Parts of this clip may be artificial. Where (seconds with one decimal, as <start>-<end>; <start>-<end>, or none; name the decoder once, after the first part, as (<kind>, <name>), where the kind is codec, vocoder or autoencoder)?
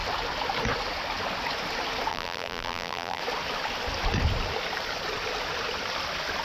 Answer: 2.1-3.2 (vocoder, BigVGAN v2)